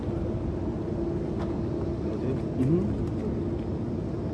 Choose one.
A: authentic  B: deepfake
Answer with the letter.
A